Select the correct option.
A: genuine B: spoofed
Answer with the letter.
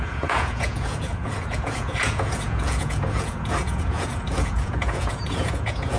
B